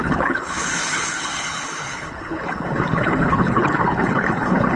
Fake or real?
fake